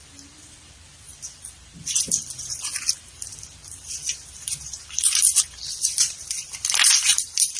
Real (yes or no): no